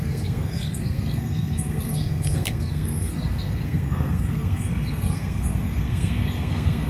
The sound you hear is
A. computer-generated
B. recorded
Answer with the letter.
A